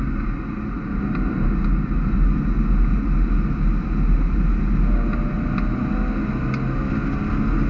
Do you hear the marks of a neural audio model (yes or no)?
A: no